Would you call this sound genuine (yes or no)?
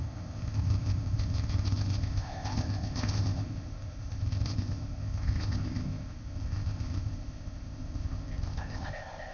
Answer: no